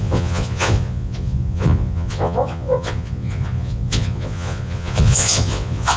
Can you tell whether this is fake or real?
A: fake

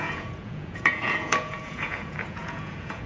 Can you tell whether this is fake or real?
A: fake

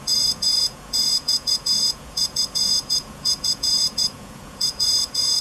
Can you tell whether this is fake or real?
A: fake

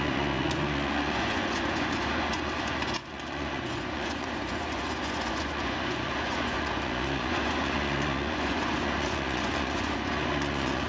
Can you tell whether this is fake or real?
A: fake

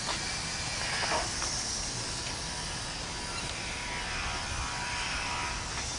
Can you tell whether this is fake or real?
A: real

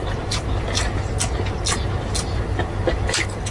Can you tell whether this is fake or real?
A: real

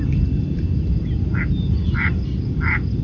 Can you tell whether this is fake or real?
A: real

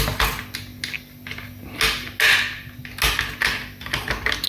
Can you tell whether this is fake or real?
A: real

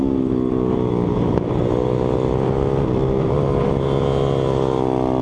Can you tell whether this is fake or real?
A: real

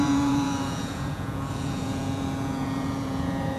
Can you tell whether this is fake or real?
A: fake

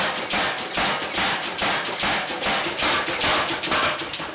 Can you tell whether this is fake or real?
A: real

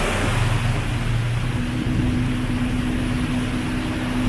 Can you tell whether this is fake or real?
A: real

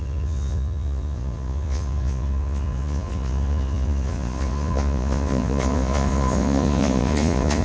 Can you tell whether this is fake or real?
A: fake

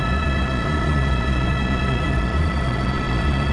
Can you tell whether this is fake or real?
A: fake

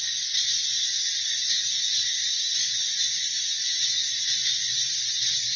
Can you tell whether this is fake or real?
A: real